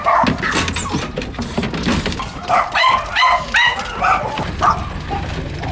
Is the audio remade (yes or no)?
no